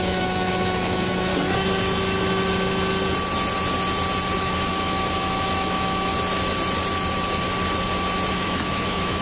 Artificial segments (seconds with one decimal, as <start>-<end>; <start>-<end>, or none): 0.0-1.3; 4.4-6.1; 8.3-9.2